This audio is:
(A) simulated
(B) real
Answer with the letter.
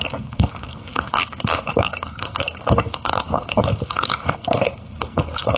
A